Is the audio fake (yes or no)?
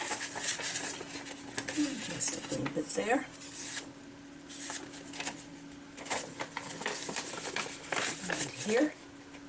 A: no